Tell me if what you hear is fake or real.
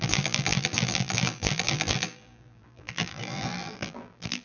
fake